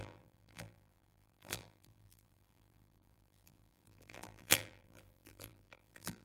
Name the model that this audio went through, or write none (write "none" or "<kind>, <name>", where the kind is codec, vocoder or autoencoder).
vocoder, BigVGAN v2